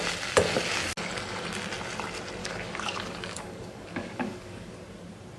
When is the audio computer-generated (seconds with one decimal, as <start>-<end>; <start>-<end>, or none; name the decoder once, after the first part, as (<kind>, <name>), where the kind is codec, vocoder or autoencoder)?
2.4-4.7 (codec, DAC)